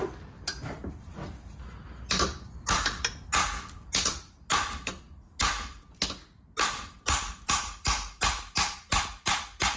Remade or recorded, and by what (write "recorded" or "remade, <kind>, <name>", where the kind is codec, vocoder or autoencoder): recorded